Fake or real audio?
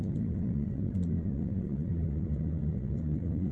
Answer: fake